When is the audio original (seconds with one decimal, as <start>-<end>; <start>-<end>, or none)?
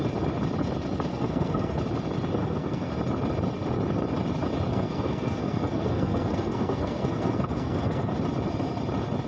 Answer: 0.0-1.1; 1.8-2.4; 2.9-4.7; 8.1-9.3